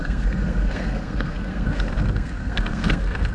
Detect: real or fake fake